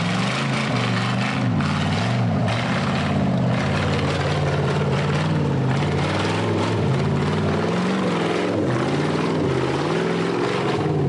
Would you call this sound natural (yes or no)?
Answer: yes